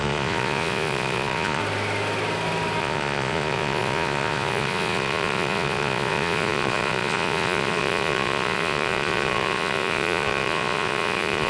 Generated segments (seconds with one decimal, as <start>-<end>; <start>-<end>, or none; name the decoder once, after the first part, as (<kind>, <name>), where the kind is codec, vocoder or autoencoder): 0.0-1.6 (vocoder, Vocos); 2.8-11.5